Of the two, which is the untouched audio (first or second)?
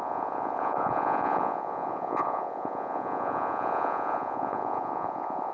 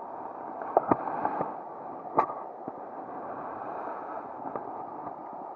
second